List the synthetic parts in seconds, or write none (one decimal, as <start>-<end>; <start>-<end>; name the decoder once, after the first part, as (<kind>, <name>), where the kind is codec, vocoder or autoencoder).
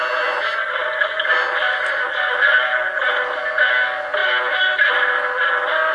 none